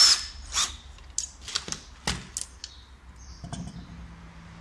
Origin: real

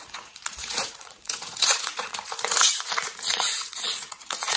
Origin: fake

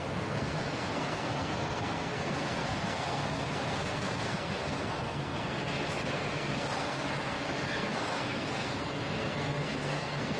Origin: fake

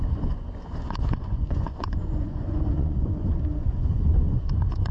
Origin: fake